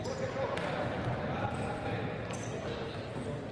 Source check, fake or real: real